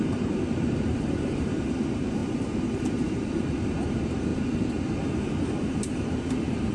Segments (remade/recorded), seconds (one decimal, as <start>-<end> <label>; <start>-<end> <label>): 0.0-4.3 remade; 4.3-5.0 recorded; 5.0-6.7 remade